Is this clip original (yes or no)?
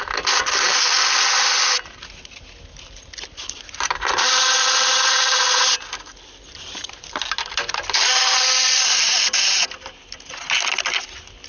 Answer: yes